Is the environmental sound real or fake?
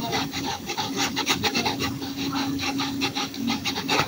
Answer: fake